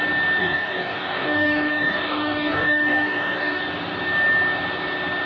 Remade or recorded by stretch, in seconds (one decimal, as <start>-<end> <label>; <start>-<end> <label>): 0.0-0.4 recorded; 0.4-3.6 remade; 3.6-5.3 recorded